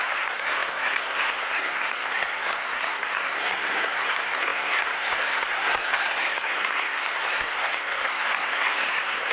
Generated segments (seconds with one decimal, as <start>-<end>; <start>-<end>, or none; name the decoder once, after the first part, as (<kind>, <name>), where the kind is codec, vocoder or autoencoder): 0.0-9.3 (codec, SNAC)